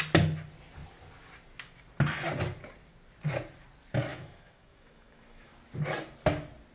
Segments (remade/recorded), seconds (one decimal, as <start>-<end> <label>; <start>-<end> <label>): 0.0-4.1 recorded; 4.1-5.5 remade; 5.5-6.7 recorded